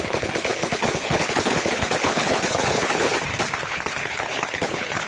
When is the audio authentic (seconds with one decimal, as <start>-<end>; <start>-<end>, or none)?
3.1-3.6

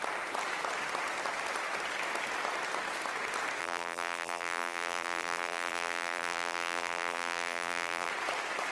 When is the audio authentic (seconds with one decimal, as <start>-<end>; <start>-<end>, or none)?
0.0-3.6; 8.1-8.7